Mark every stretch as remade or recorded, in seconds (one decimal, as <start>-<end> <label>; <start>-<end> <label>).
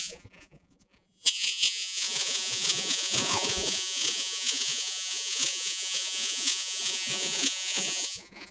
0.0-8.5 remade